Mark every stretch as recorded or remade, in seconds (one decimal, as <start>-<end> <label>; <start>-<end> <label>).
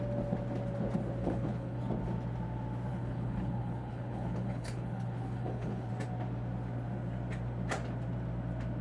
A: 0.0-1.2 recorded; 1.2-1.8 remade; 1.8-2.9 recorded; 2.9-5.9 remade; 5.9-8.8 recorded